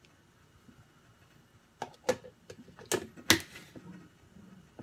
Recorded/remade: recorded